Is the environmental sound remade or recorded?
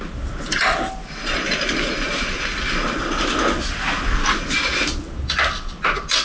recorded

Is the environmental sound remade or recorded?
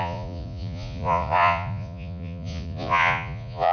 remade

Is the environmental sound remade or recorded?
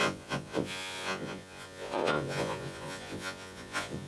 remade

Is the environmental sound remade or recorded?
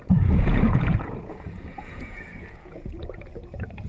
remade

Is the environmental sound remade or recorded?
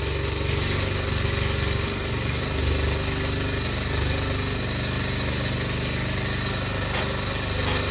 recorded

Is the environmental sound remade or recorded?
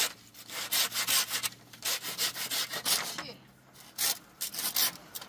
recorded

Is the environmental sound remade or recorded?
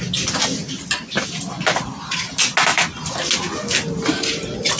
recorded